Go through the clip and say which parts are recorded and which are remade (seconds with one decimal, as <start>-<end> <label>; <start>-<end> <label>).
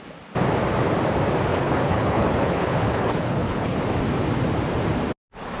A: 0.0-1.5 recorded; 1.5-3.8 remade; 3.8-5.6 recorded